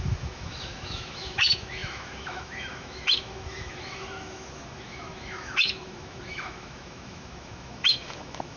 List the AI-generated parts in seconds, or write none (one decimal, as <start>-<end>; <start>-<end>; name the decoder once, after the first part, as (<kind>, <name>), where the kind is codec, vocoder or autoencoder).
0.0-8.6 (autoencoder, DAC-VAE)